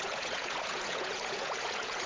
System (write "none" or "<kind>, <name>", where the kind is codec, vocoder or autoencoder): vocoder, Vocos